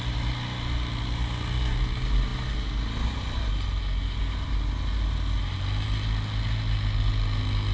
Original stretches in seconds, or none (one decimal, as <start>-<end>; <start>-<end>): 0.0-7.7